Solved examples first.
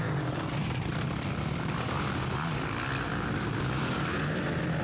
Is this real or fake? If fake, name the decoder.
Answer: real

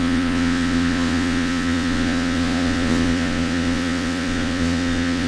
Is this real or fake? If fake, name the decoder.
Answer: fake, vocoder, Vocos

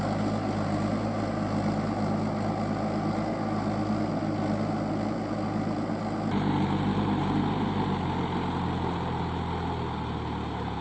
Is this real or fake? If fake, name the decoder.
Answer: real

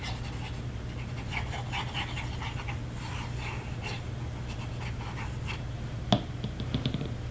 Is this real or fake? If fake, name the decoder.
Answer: real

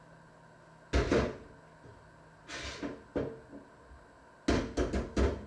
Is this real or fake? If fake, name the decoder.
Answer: real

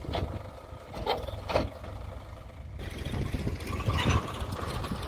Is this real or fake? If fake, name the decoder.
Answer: real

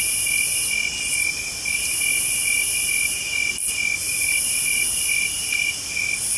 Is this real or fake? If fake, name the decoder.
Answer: real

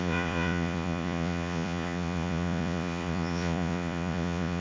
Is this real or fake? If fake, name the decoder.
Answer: fake, vocoder, Vocos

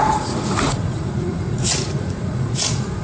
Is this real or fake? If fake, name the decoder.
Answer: fake, vocoder, Vocos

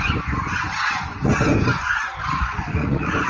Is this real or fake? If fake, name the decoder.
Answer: fake, vocoder, Vocos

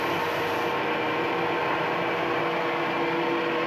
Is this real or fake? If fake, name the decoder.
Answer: real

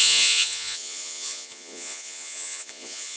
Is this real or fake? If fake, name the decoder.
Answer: fake, vocoder, Vocos